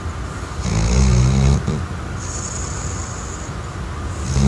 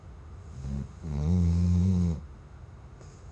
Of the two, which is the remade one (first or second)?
second